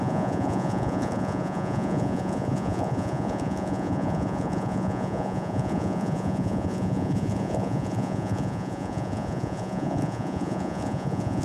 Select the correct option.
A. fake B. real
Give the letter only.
A